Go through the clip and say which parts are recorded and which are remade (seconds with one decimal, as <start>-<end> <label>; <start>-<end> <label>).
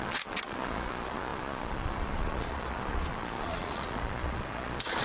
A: 0.0-5.0 remade